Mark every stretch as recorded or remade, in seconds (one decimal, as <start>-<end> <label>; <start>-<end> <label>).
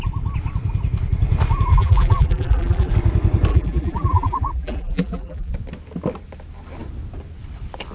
0.0-1.7 recorded; 1.7-2.9 remade; 2.9-3.5 recorded; 3.5-5.5 remade; 5.5-7.9 recorded